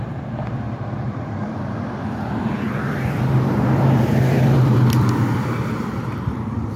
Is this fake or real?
fake